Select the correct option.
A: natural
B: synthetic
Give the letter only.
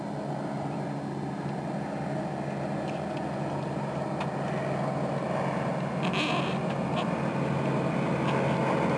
A